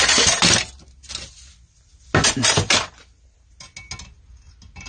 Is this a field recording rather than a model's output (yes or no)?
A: yes